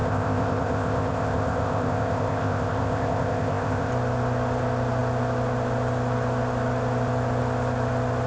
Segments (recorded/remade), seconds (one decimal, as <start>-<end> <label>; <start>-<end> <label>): 0.0-3.9 remade; 3.9-8.3 recorded